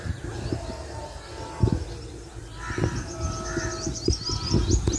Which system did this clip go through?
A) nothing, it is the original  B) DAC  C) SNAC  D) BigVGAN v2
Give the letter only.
A